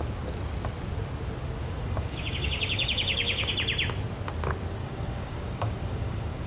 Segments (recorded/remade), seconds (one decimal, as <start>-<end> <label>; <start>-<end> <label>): 0.0-1.6 recorded; 1.6-3.5 remade; 3.5-4.8 recorded; 4.8-6.5 remade